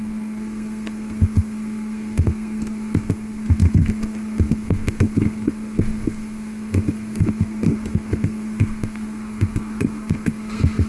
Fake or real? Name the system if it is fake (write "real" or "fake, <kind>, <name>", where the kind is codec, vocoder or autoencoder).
fake, codec, SNAC